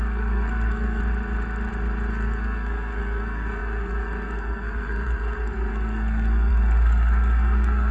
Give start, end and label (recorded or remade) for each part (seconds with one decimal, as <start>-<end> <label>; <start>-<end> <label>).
0.0-1.0 remade; 1.0-2.1 recorded; 2.1-7.9 remade